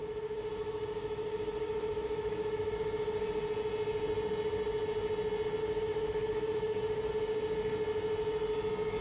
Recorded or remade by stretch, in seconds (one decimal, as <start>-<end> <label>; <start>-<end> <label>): 0.0-2.8 remade; 2.8-5.6 recorded; 5.6-7.1 remade; 7.1-9.0 recorded